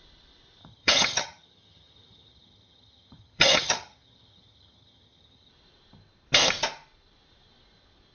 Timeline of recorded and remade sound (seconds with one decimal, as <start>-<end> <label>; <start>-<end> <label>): 0.0-0.6 recorded; 0.6-5.5 remade; 5.5-8.1 recorded